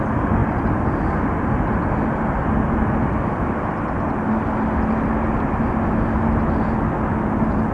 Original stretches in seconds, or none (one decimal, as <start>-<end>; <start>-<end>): 0.0-7.7